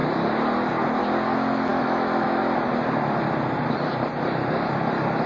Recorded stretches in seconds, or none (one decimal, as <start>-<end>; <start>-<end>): 0.0-1.7; 2.4-5.3

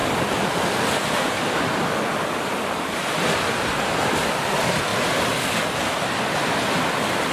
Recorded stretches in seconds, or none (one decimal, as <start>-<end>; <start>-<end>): 0.0-7.3

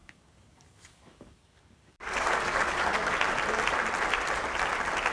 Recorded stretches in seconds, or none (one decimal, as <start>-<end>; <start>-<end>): 3.1-5.1

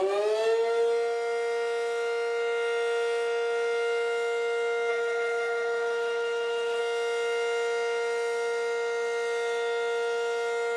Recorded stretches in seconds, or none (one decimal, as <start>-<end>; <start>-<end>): 0.0-4.9; 6.8-10.8

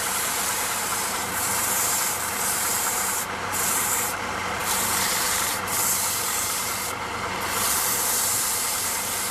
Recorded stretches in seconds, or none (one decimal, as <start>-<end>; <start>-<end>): none

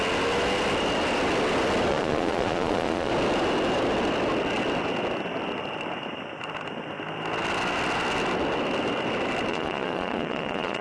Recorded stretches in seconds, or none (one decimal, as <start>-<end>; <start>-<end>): 0.0-1.9; 3.1-9.5

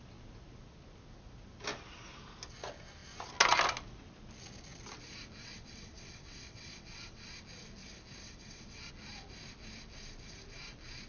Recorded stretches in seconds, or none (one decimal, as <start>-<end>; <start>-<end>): 0.0-5.4; 7.4-8.2; 8.9-11.1